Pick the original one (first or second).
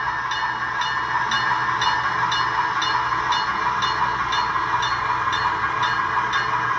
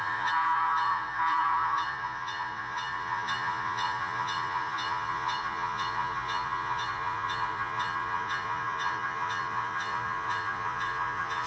first